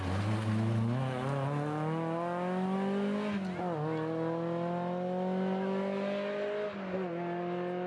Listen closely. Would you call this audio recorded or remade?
recorded